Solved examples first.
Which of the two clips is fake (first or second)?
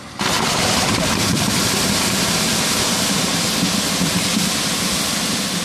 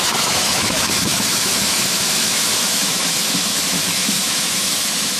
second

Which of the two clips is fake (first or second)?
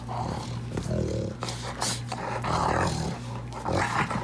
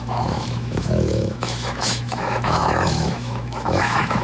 second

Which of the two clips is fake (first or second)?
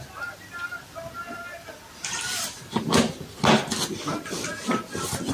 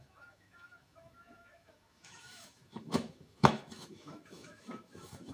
second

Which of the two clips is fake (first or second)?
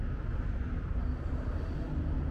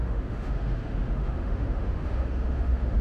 second